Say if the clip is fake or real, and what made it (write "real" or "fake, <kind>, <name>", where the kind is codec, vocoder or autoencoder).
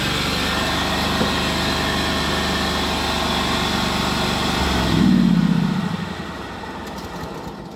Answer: real